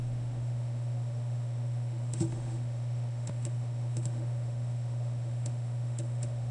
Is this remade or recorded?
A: remade